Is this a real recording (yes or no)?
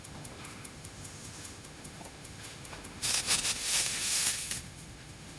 no